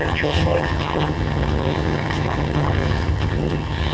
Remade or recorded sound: remade